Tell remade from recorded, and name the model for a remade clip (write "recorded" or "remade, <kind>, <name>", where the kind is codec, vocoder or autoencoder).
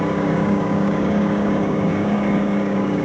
remade, codec, DAC